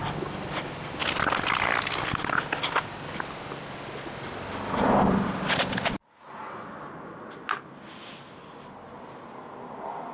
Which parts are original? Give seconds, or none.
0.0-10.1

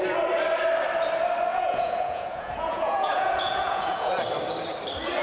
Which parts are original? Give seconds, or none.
0.0-1.5; 4.1-5.2

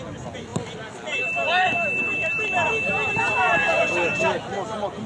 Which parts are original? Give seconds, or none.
0.0-5.1

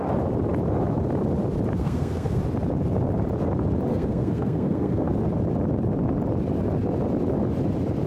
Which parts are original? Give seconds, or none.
0.0-1.8; 2.4-3.9; 5.1-8.1

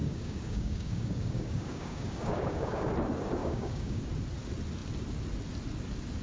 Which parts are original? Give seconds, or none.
2.9-3.4; 4.0-6.2

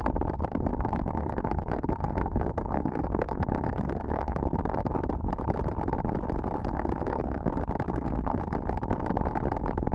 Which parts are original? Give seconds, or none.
0.0-0.7; 4.9-6.6; 7.5-7.9; 8.4-9.9